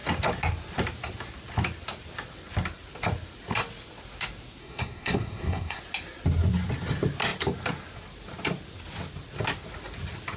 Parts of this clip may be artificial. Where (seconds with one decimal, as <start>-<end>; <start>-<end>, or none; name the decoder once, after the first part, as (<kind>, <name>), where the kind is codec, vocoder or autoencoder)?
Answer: 4.6-5.8 (codec, SNAC)